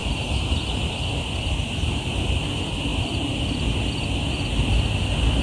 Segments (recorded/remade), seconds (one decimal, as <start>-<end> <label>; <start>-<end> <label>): 0.0-5.4 recorded